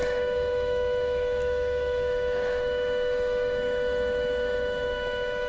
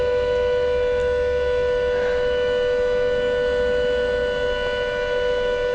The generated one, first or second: first